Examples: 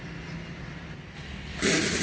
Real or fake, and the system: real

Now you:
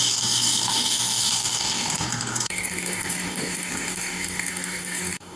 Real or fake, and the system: fake, codec, DAC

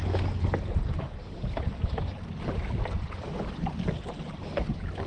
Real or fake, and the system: real